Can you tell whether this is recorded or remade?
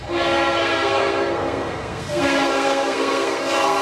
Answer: remade